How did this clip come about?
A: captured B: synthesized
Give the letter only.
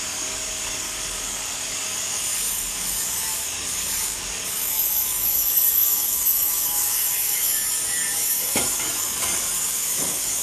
B